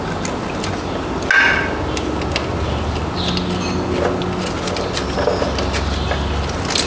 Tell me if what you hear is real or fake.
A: real